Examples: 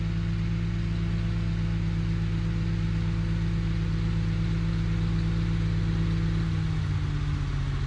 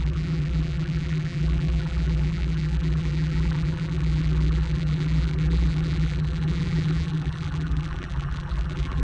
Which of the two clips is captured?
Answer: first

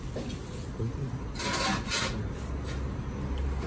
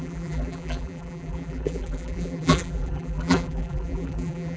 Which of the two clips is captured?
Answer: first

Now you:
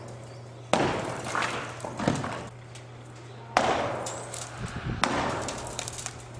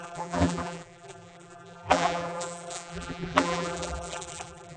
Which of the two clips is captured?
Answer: first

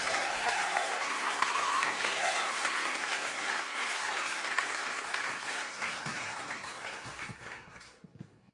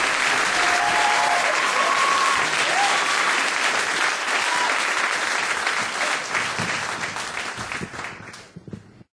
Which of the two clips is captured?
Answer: second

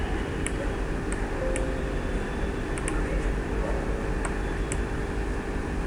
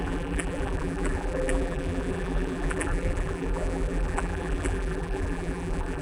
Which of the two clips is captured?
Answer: first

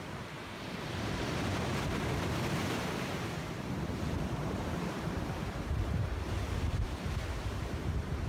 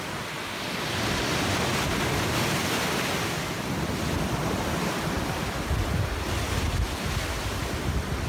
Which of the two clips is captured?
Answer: second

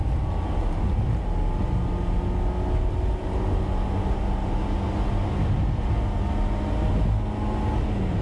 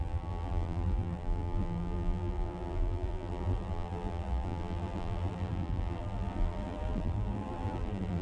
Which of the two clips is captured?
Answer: first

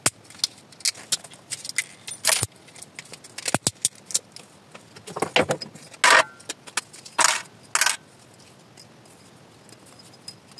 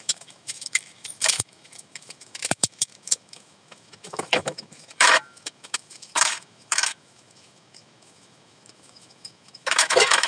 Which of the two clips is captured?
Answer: first